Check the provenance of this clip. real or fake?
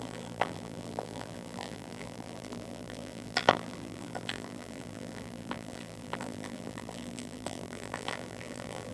fake